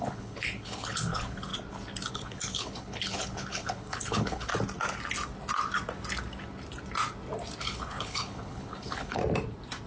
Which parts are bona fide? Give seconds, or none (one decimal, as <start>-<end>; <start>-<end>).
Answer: 1.5-2.1; 4.5-7.6; 9.2-9.9